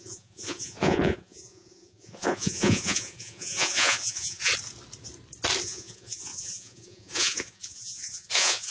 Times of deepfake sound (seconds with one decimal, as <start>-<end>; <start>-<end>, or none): 0.0-4.5; 5.6-8.7